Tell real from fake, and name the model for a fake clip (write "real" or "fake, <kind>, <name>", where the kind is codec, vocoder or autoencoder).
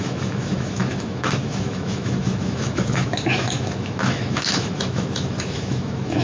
fake, autoencoder, DAC-VAE